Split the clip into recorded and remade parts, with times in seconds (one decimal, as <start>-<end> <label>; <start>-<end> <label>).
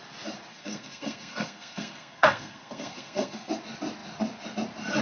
0.0-0.5 recorded; 0.5-3.5 remade; 3.5-5.0 recorded